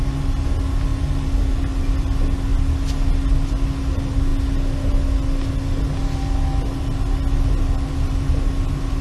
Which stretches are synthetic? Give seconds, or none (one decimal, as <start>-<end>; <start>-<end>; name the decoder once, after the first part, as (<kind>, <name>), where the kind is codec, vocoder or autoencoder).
none